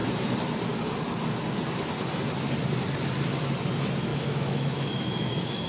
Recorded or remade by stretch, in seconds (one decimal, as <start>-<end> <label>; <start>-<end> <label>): 0.0-4.1 recorded; 4.1-5.7 remade